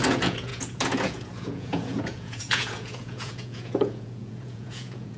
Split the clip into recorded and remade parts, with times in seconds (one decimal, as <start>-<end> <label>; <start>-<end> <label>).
0.0-5.2 remade